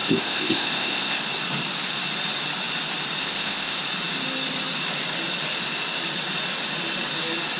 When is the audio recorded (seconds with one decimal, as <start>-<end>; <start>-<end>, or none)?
1.2-3.2; 3.8-7.6